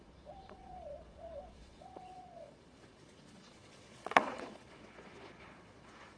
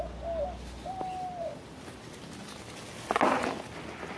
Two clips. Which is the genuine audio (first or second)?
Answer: second